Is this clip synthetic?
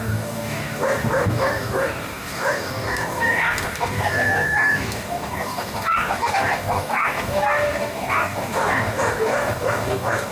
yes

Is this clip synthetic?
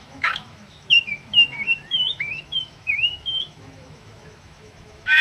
yes